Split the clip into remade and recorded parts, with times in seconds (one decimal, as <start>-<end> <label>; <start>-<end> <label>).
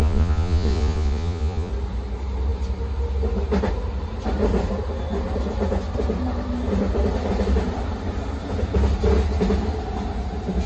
0.0-1.7 remade; 1.7-10.7 recorded